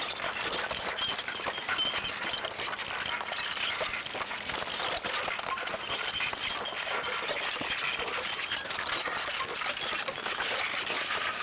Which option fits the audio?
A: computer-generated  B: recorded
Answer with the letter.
B